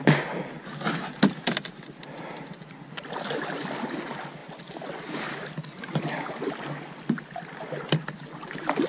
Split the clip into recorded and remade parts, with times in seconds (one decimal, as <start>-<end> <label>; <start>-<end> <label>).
0.0-8.9 recorded